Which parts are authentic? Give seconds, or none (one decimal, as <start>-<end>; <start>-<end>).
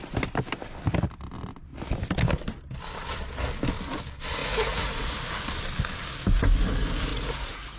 0.0-4.4; 5.3-7.1